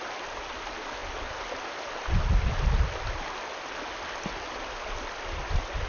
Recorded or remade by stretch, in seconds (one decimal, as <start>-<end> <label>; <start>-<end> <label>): 0.0-5.9 recorded